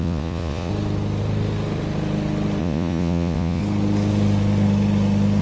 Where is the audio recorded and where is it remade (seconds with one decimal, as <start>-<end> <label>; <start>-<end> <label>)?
0.0-0.7 remade; 0.7-2.6 recorded; 2.6-3.6 remade; 3.6-5.4 recorded